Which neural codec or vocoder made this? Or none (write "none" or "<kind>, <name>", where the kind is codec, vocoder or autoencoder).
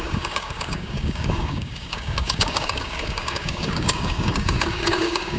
codec, DAC